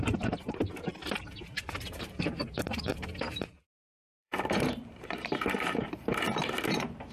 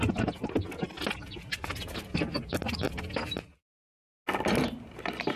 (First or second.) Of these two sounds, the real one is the second